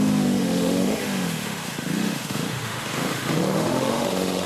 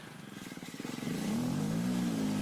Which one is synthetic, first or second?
first